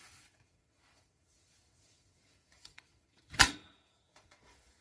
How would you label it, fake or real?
fake